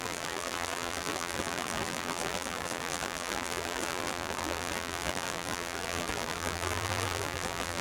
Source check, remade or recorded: remade